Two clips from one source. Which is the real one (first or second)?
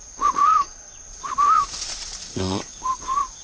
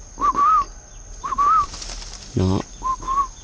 second